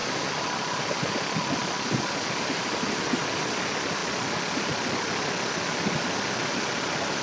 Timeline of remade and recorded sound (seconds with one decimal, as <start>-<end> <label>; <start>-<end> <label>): 0.0-7.2 recorded

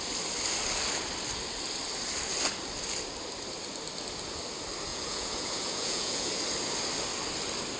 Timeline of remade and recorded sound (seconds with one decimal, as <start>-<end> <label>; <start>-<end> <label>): 0.0-4.9 recorded; 4.9-6.4 remade; 6.4-7.8 recorded

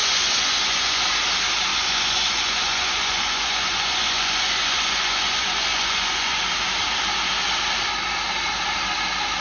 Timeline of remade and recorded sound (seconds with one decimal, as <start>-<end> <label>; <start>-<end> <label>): 0.0-1.0 remade; 1.0-1.7 recorded; 1.7-6.4 remade; 6.4-9.4 recorded

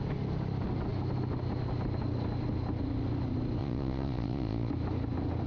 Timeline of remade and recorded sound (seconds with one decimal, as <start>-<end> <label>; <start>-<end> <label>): 0.0-3.6 recorded; 3.6-4.7 remade; 4.7-5.5 recorded

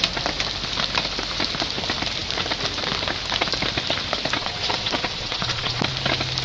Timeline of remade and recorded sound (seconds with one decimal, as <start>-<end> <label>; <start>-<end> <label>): 0.0-4.4 recorded; 4.4-5.8 remade; 5.8-6.4 recorded

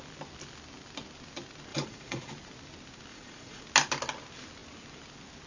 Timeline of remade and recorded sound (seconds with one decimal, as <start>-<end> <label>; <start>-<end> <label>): 0.0-1.7 recorded; 1.7-2.3 remade; 2.3-3.1 recorded; 3.1-3.6 remade; 3.6-5.5 recorded